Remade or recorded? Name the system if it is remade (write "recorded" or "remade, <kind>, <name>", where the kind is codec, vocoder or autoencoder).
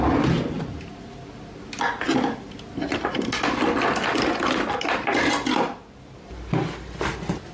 recorded